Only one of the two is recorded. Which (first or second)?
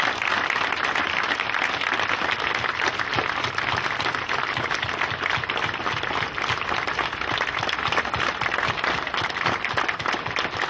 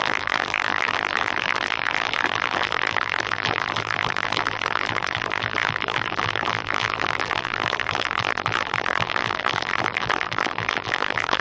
first